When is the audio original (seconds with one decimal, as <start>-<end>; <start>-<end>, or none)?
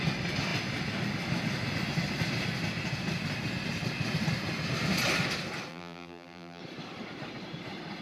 0.0-5.7; 6.6-8.0